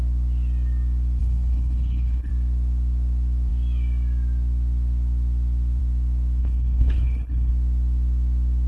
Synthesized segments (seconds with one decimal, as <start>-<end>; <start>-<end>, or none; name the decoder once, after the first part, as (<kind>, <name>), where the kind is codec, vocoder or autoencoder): 1.2-2.3 (codec, HILCodec); 6.4-7.5